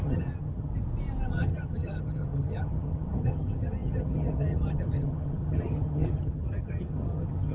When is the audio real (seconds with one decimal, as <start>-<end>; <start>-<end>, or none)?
0.7-1.3